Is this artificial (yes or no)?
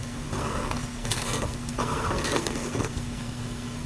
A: yes